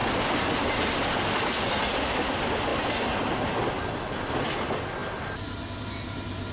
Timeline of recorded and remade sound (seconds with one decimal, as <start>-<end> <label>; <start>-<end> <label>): 0.0-2.3 remade; 2.3-6.5 recorded